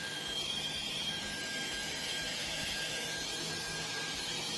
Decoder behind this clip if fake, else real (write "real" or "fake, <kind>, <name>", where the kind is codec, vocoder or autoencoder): fake, autoencoder, DAC-VAE